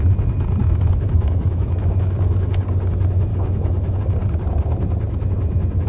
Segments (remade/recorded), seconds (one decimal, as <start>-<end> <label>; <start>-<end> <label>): 0.0-0.6 recorded; 0.6-2.5 remade; 2.5-3.3 recorded; 3.3-4.0 remade; 4.0-5.9 recorded